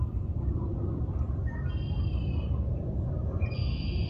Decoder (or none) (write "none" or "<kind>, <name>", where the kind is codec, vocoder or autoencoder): none